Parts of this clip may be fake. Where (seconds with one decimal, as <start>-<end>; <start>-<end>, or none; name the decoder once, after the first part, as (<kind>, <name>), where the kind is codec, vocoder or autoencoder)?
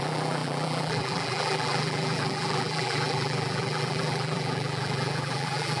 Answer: 0.0-5.8 (vocoder, BigVGAN v2)